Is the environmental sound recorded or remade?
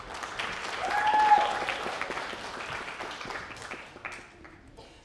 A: recorded